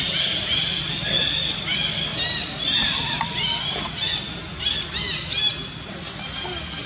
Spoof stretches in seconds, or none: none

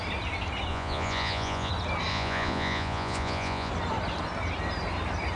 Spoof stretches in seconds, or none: 0.7-1.7 (vocoder, Vocos); 2.1-3.7

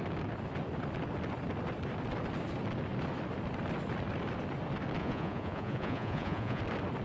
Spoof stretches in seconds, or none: 5.0-6.6 (vocoder, Vocos)

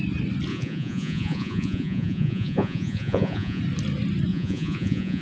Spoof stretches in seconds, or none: 0.5-3.6 (vocoder, Vocos); 4.3-5.2

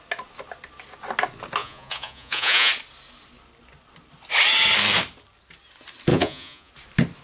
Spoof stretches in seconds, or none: 1.6-2.7 (vocoder, Vocos); 6.1-6.7

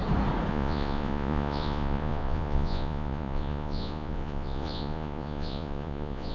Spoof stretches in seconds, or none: 0.5-6.3 (vocoder, Vocos)